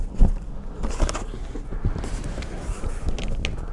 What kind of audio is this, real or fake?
real